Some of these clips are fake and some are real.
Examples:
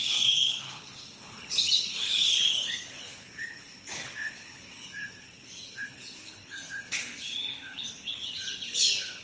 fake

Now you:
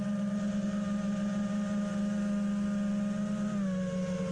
real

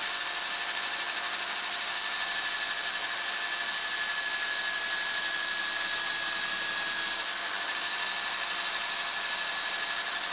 real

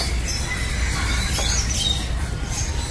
real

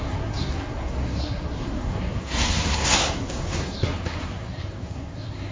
fake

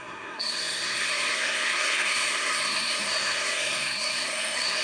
fake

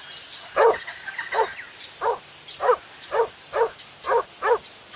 real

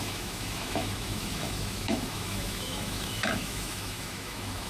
fake